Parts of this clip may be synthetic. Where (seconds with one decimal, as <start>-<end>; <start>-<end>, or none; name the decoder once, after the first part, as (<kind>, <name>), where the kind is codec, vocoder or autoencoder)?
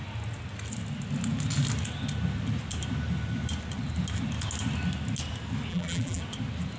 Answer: 5.7-6.2 (vocoder, BigVGAN v2)